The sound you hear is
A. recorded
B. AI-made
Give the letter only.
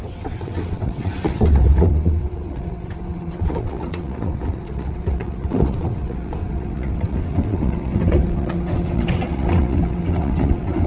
B